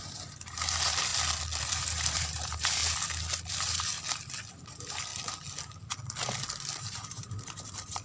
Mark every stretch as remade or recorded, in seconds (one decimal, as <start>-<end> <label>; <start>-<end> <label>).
0.0-1.1 remade; 1.1-1.6 recorded; 1.6-2.8 remade; 2.8-3.5 recorded; 3.5-3.9 remade; 3.9-4.5 recorded; 4.5-5.1 remade; 5.1-6.8 recorded; 6.8-8.0 remade